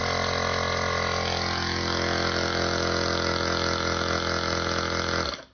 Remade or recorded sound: recorded